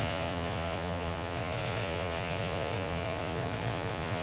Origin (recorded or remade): remade